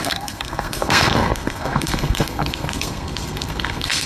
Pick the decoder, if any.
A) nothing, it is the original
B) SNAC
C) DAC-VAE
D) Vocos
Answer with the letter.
B